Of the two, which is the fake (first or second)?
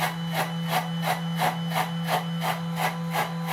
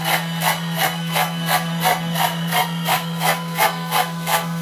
second